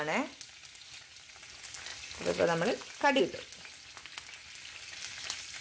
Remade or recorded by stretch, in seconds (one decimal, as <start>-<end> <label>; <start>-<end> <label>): 0.0-5.6 recorded

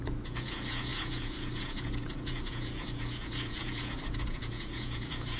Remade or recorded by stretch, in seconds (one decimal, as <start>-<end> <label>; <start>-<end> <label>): 0.0-5.4 remade

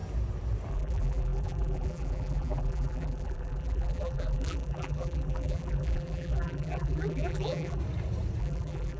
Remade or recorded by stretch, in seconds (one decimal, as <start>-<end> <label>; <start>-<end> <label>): 0.0-0.7 recorded; 0.7-7.8 remade; 7.8-8.4 recorded; 8.4-9.0 remade

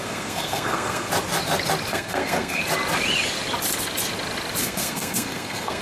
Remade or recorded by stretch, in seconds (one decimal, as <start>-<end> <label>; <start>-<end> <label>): 0.0-1.1 remade; 1.1-1.9 recorded; 1.9-2.6 remade; 2.6-4.6 recorded; 4.6-5.8 remade

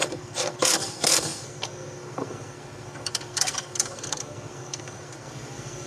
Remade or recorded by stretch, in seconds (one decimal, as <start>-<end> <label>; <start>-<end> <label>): 0.0-5.9 remade

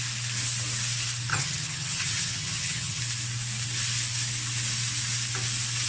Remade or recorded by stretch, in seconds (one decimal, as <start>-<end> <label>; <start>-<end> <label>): 0.0-1.3 recorded; 1.3-3.0 remade; 3.0-5.9 recorded

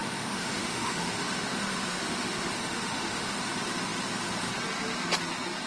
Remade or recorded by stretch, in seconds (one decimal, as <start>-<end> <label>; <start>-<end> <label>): 0.0-3.4 remade; 3.4-5.7 recorded

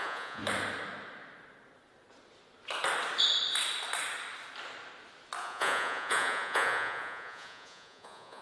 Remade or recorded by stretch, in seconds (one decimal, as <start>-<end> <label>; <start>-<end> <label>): 0.0-0.4 remade; 0.4-5.4 recorded; 5.4-8.4 remade